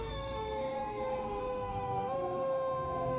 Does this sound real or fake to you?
fake